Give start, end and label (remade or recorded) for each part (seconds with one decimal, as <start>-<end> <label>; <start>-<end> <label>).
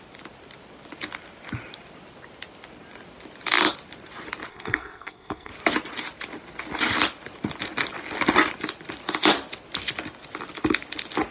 0.0-4.5 recorded; 4.5-5.5 remade; 5.5-11.3 recorded